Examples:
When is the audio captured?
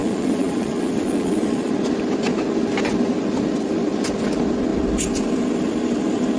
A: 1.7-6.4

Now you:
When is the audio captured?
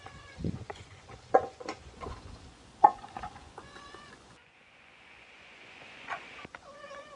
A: none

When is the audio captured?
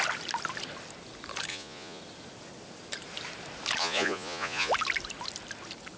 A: 0.0-1.5; 2.0-3.8; 4.7-6.0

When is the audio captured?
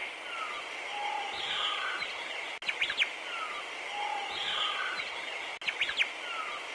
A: 0.0-6.7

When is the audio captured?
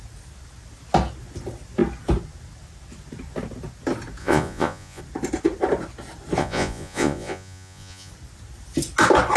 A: 0.0-4.2; 5.0-6.4; 8.1-9.4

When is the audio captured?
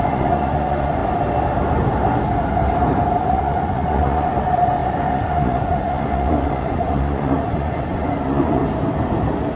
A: 1.0-3.3; 8.6-9.6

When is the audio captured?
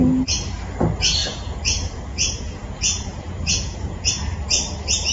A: 0.0-1.2; 4.1-5.1